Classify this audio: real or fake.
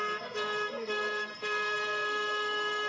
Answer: fake